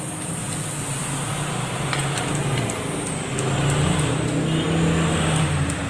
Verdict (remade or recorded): recorded